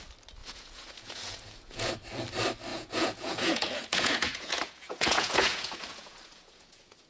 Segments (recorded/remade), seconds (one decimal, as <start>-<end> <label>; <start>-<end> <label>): 0.0-0.4 recorded; 0.4-1.9 remade; 1.9-2.7 recorded; 2.7-7.1 remade